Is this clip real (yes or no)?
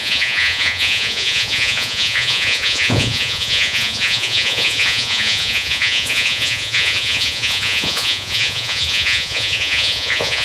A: no